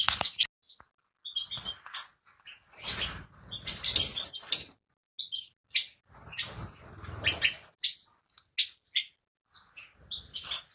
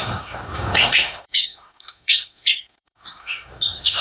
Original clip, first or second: first